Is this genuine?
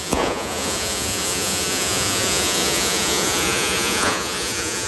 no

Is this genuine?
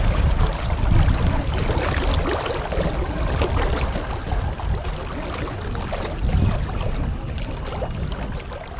yes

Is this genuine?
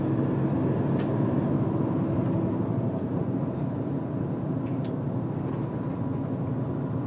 yes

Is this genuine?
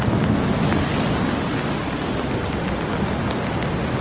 yes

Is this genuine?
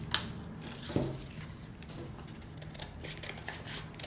yes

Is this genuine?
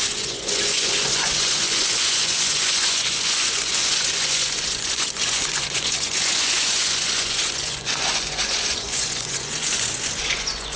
no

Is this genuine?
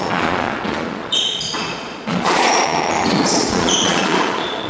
no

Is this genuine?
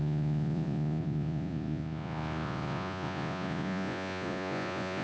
no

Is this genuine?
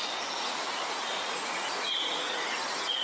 no